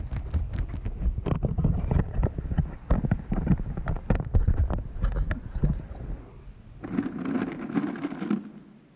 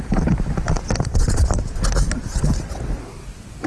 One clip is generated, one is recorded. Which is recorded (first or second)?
first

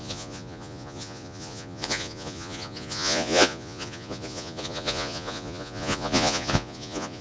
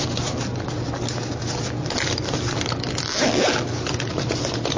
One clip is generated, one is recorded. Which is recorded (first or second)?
second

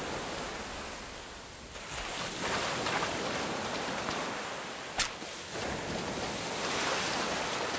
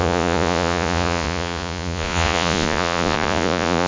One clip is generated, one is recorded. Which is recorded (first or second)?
first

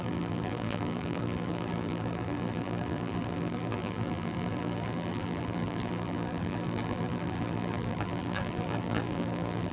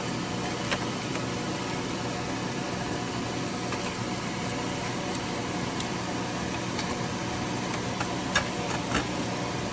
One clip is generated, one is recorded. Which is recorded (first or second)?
second